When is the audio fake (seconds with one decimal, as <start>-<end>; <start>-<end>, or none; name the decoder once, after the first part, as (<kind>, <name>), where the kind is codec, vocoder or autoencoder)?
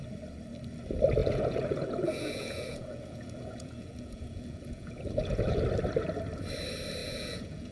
1.2-5.6 (vocoder, Vocos); 7.0-7.7